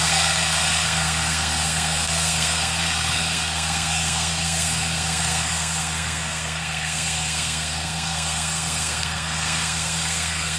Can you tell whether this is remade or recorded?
remade